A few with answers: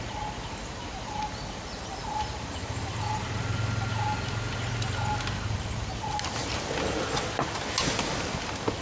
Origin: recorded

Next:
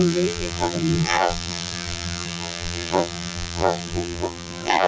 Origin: remade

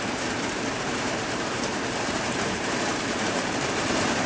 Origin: remade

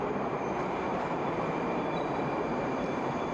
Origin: remade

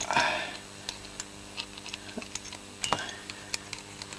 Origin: recorded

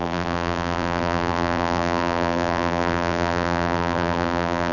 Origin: remade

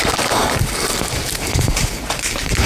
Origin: remade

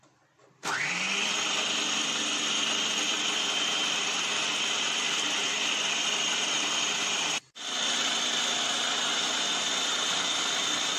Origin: remade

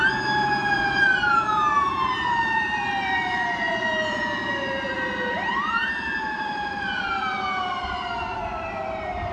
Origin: remade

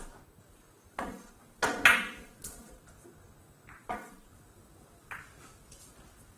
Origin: recorded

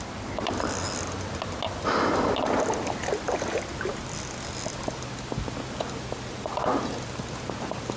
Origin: recorded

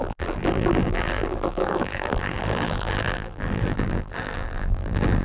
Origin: remade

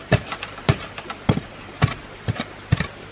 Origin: recorded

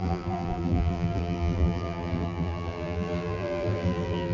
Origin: remade